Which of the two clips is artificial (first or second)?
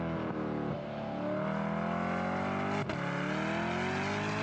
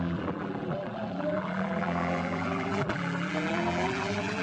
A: second